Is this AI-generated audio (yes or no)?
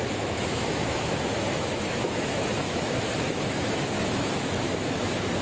yes